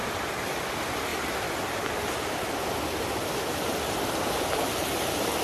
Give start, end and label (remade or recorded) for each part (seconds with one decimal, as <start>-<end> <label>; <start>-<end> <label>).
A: 0.0-0.7 remade; 0.7-5.4 recorded